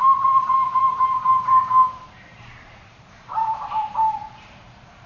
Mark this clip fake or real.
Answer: fake